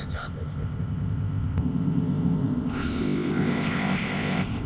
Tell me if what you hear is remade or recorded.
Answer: remade